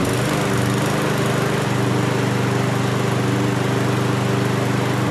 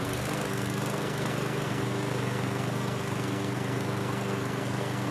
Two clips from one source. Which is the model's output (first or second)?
second